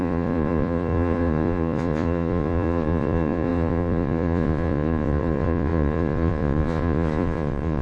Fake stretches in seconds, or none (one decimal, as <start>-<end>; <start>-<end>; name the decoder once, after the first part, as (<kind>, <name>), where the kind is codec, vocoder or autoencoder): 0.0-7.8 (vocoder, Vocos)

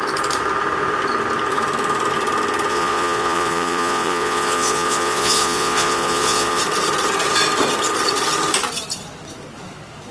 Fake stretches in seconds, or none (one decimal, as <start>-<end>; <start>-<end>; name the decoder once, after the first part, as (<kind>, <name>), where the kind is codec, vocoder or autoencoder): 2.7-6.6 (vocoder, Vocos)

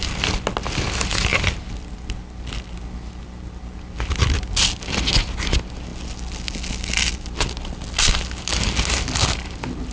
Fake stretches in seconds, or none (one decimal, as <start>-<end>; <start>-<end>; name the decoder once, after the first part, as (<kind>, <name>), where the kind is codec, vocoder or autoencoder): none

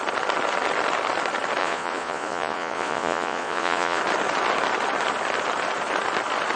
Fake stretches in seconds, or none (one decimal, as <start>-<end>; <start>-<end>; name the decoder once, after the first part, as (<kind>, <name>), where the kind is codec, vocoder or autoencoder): 1.6-4.0 (vocoder, Vocos)

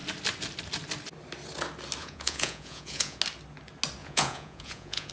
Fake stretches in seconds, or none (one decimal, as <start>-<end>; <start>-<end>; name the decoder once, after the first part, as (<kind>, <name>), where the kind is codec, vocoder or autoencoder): 2.0-3.2 (vocoder, Vocos); 4.0-5.1

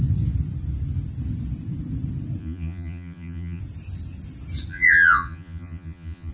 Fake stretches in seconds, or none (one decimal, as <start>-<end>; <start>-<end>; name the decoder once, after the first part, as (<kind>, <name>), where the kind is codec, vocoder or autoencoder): 2.4-3.6 (vocoder, Vocos); 4.7-6.3